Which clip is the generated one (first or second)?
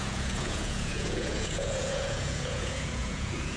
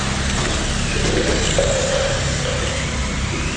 first